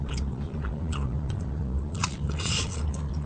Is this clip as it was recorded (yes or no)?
no